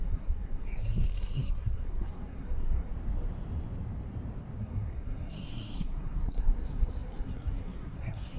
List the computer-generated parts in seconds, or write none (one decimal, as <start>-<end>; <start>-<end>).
0.0-2.9; 4.6-8.4